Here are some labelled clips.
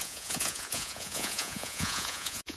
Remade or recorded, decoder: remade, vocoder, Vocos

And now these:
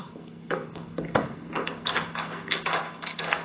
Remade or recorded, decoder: remade, codec, SNAC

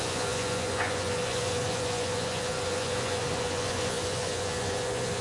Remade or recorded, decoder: remade, vocoder, Vocos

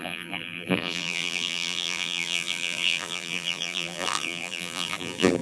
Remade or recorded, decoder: remade, vocoder, BigVGAN v2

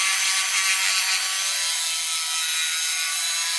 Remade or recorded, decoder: recorded